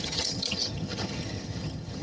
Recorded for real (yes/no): no